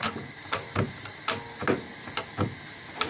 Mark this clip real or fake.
real